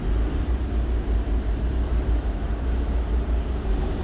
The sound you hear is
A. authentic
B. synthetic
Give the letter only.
B